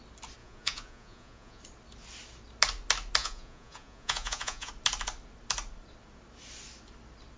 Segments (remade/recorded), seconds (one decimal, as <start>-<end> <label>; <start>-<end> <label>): 0.0-0.4 recorded; 0.4-1.6 remade; 1.6-3.2 recorded; 3.2-4.7 remade; 4.7-7.4 recorded